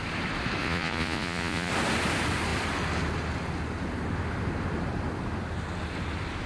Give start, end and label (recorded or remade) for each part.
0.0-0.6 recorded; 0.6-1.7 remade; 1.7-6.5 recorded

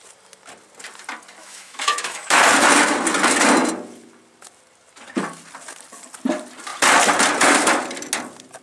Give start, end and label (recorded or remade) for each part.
0.0-1.4 recorded; 1.4-2.5 remade; 2.5-8.6 recorded

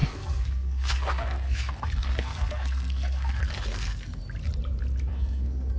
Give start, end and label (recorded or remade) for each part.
0.0-4.2 remade; 4.2-5.1 recorded; 5.1-5.8 remade

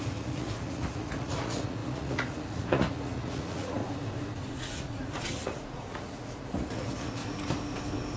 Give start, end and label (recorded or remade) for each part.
0.0-3.8 remade; 3.8-4.6 recorded; 4.6-7.2 remade; 7.2-8.2 recorded

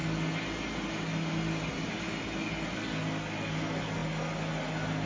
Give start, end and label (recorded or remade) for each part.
0.0-5.1 recorded

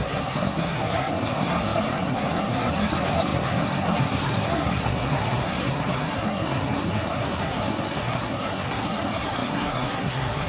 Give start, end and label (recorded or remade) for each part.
0.0-10.5 remade

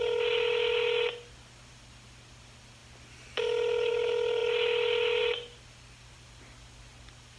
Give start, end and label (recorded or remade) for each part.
0.0-7.4 recorded